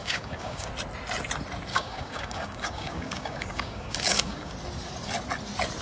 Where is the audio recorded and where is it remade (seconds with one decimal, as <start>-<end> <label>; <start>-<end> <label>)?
0.0-0.7 remade; 0.7-1.7 recorded; 1.7-4.5 remade; 4.5-5.8 recorded